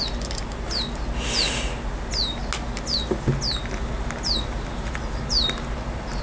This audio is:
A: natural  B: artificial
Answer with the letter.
A